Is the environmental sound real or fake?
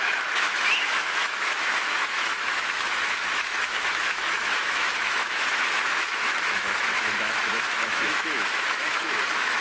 fake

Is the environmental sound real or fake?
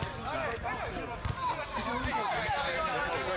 real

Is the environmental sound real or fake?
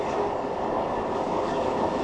fake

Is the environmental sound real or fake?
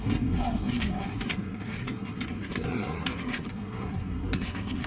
fake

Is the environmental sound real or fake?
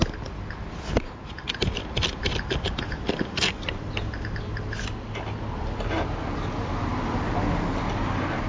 real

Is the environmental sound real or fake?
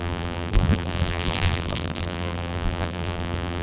fake